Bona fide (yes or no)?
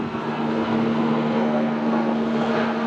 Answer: no